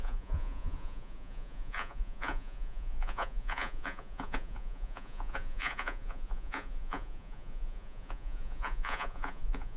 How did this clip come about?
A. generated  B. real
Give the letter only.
A